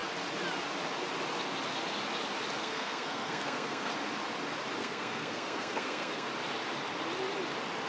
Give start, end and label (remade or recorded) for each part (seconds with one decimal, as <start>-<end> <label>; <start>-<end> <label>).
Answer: 0.0-2.6 recorded; 2.6-3.9 remade; 3.9-4.8 recorded; 4.8-6.3 remade; 6.3-7.9 recorded